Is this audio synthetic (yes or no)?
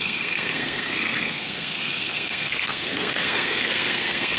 yes